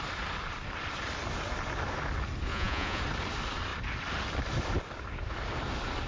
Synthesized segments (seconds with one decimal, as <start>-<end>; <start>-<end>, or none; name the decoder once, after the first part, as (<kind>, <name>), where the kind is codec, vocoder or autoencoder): 2.5-3.0 (vocoder, Vocos)